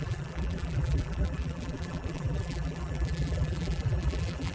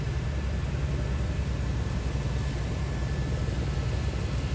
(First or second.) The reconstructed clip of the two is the first